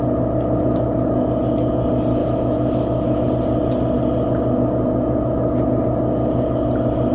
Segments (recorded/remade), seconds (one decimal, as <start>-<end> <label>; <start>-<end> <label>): 0.0-2.2 recorded; 2.2-3.3 remade; 3.3-7.1 recorded